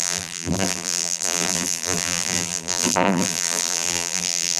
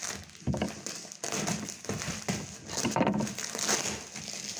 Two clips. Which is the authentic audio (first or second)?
second